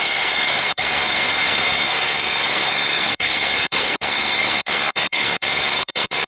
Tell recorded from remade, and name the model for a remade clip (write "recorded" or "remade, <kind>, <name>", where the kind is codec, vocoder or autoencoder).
remade, codec, SNAC